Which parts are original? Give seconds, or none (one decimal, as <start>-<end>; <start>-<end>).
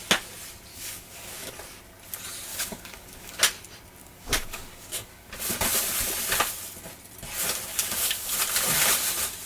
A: 0.0-0.7; 1.5-2.5; 3.4-4.0; 5.3-7.7; 8.3-9.5